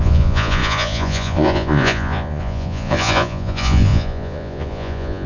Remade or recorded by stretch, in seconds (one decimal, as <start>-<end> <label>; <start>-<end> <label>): 0.0-5.3 remade